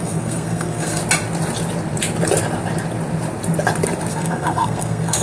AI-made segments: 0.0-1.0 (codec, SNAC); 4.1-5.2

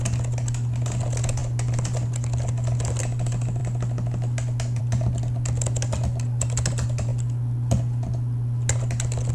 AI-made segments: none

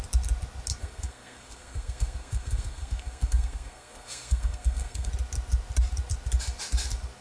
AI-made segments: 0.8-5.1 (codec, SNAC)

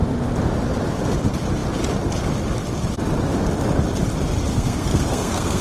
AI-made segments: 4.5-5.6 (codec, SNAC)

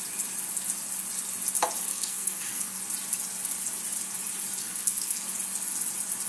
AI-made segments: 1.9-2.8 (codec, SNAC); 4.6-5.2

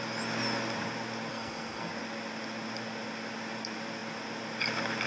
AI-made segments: 1.3-1.9 (codec, SNAC)